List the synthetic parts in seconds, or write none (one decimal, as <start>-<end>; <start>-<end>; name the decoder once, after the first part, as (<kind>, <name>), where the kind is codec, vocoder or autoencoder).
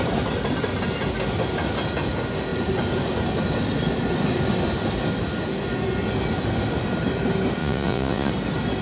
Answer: 7.6-8.3 (vocoder, Vocos)